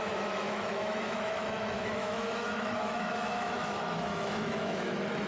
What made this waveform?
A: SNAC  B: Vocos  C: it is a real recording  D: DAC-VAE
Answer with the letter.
D